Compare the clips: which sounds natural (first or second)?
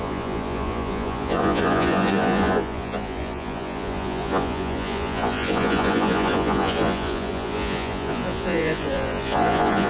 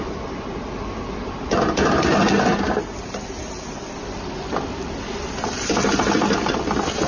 second